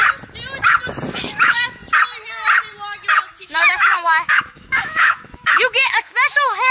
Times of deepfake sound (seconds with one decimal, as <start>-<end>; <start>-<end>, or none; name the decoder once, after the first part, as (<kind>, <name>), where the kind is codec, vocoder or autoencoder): 1.1-1.8 (autoencoder, DAC-VAE); 3.4-6.7